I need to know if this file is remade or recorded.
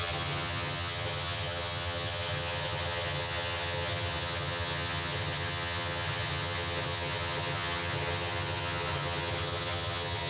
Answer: remade